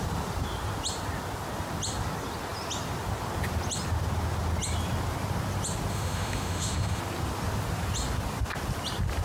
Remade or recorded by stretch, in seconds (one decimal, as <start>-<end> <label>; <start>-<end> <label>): 0.0-5.9 recorded; 5.9-7.0 remade; 7.0-9.2 recorded